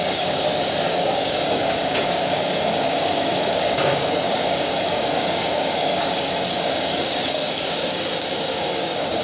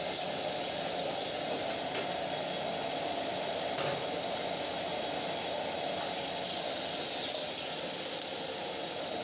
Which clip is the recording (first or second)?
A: second